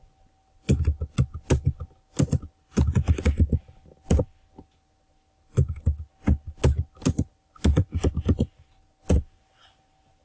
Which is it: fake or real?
real